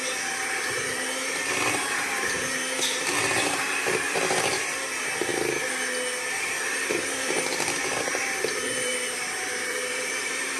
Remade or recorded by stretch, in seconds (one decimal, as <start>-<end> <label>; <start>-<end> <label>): 0.0-5.3 remade; 5.3-6.3 recorded; 6.3-10.6 remade